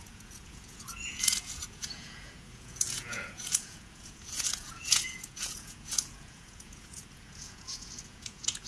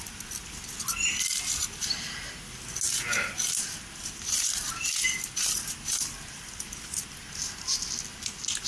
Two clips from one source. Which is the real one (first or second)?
second